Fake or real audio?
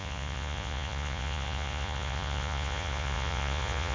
fake